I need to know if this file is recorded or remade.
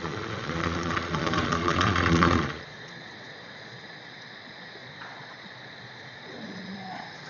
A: remade